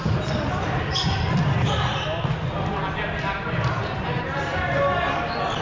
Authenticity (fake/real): real